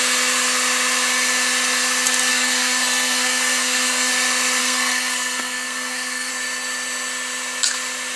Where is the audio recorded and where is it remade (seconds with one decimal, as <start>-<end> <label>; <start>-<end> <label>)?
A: 0.0-2.3 recorded; 2.3-4.1 remade; 4.1-4.6 recorded; 4.6-6.3 remade; 6.3-8.2 recorded